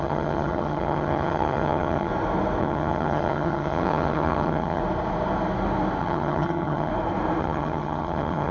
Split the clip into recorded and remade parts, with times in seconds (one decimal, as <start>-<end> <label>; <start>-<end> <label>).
0.0-2.1 remade; 2.1-2.6 recorded; 2.6-4.8 remade; 4.8-6.0 recorded; 6.0-6.9 remade; 6.9-7.4 recorded; 7.4-8.5 remade